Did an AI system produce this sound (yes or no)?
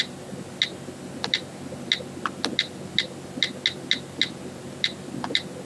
no